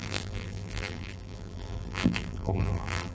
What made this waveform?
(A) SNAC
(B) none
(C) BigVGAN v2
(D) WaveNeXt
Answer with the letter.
C